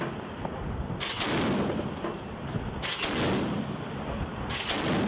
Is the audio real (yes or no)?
yes